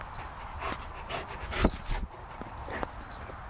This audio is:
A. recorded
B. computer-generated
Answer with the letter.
A